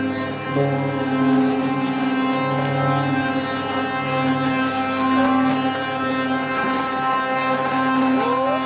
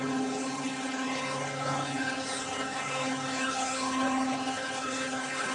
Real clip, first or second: first